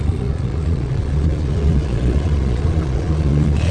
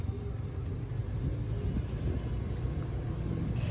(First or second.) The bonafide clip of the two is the second